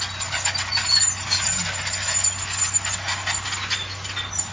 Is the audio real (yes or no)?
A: yes